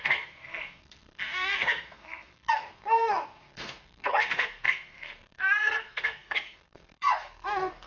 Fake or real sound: fake